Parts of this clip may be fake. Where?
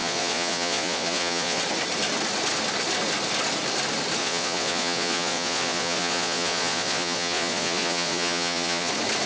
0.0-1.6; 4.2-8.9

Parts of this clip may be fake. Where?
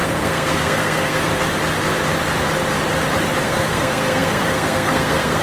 0.0-1.3; 3.4-5.4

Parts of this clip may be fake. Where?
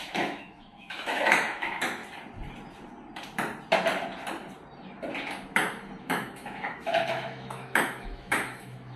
0.0-2.0; 6.0-9.0